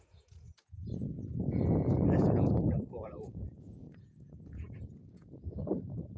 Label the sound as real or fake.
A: fake